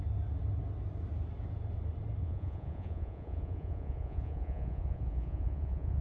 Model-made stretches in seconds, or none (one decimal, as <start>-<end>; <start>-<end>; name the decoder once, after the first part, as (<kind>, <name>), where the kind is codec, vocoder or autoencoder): 2.2-6.0 (vocoder, Vocos)